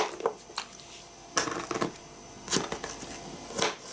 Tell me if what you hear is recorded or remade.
recorded